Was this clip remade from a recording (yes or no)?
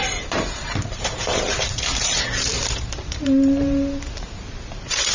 yes